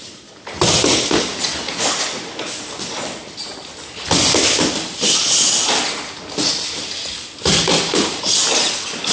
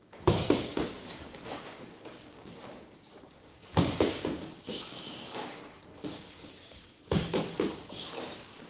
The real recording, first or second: first